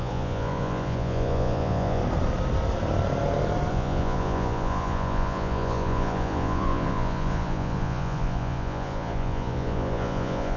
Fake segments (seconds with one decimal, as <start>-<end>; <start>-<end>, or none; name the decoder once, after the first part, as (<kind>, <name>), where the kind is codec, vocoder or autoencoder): 0.0-2.0 (vocoder, Vocos); 3.7-10.6